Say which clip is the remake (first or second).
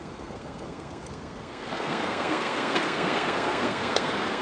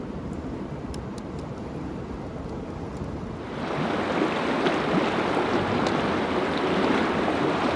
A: first